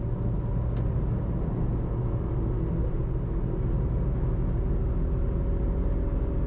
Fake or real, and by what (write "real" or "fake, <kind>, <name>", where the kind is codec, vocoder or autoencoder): real